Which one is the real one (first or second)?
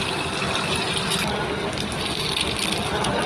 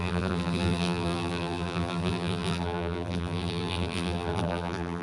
first